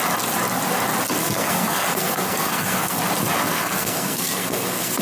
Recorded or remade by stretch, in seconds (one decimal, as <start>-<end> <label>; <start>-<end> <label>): 0.0-1.2 recorded; 1.2-3.0 remade; 3.0-3.5 recorded; 3.5-5.0 remade